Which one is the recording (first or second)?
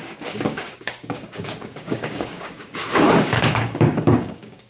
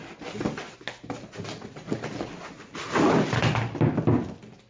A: second